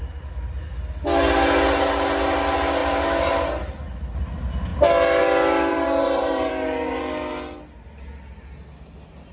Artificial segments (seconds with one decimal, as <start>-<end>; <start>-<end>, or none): 5.7-6.5